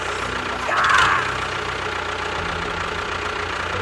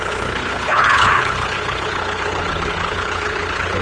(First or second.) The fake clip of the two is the second